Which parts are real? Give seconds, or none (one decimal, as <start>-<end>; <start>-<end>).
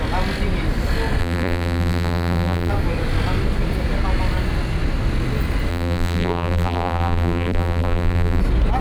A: 0.0-1.2; 2.7-5.7; 8.4-8.8